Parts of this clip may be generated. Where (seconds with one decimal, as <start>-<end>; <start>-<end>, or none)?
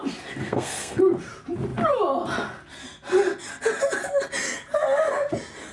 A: 0.4-1.0